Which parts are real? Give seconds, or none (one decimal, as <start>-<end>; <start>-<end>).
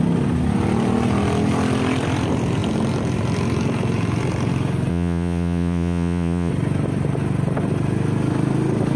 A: 0.0-4.9; 6.5-9.0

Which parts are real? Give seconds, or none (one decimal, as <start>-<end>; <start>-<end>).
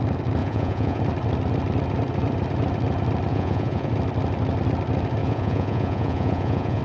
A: 0.0-0.4; 1.0-3.3; 3.9-5.2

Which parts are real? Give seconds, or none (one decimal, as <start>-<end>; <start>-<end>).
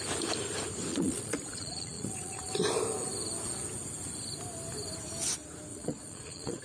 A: 0.0-0.9; 2.5-5.7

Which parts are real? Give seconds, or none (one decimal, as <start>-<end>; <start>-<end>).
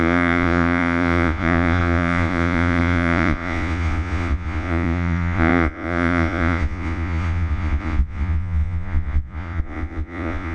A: none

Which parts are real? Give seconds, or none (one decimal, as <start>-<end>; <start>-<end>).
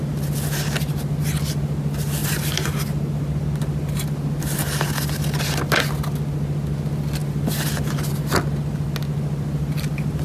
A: 0.0-10.2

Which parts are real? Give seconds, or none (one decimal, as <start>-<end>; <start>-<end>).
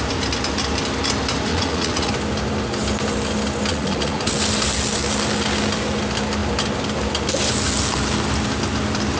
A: 0.0-1.5; 2.1-3.7; 4.3-9.2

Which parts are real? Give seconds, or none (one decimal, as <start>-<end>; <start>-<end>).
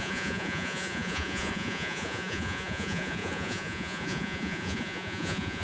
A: none